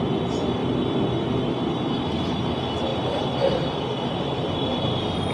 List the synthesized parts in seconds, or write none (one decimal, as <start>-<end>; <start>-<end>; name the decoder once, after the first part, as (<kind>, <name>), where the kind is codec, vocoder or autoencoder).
none